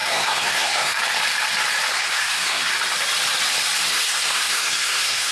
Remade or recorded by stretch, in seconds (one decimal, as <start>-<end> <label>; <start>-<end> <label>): 0.0-1.0 remade; 1.0-1.9 recorded; 1.9-2.7 remade; 2.7-3.8 recorded; 3.8-5.3 remade